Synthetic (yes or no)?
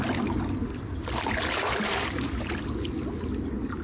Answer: no